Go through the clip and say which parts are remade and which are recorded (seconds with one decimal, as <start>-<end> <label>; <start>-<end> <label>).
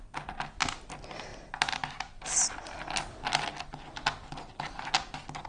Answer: 0.0-5.5 recorded